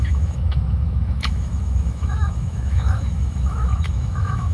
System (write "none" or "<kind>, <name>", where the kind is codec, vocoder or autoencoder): autoencoder, DAC-VAE